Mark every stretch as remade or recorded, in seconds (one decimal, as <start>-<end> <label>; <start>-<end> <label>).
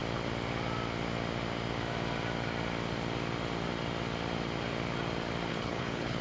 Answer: 0.0-5.5 recorded; 5.5-6.2 remade